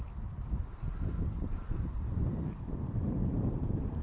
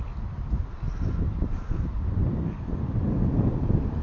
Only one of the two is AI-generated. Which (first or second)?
first